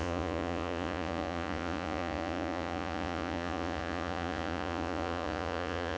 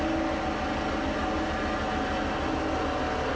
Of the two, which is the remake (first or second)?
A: first